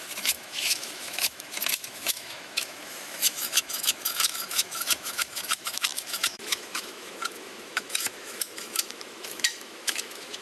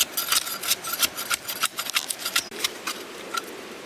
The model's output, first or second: first